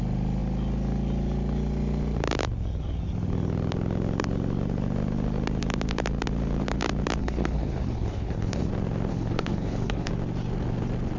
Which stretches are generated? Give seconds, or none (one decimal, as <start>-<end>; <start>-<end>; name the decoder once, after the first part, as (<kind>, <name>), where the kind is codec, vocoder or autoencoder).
7.2-8.7 (codec, HILCodec); 9.1-10.1